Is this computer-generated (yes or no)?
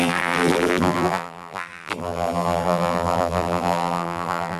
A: yes